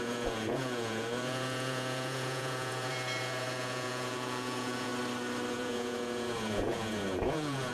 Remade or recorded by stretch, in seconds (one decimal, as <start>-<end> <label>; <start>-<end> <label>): 0.0-4.9 remade; 4.9-5.5 recorded; 5.5-7.7 remade